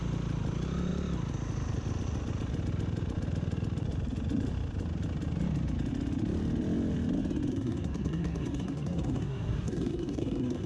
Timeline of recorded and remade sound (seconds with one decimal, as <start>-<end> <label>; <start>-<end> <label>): 0.0-7.5 recorded; 7.5-10.7 remade